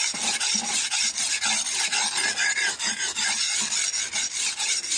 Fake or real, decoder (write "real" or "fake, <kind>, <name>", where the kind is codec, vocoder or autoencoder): real